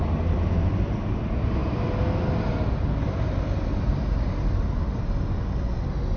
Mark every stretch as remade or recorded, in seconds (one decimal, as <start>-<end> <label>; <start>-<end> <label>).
0.0-6.2 recorded